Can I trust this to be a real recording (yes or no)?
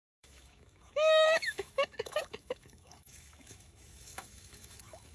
no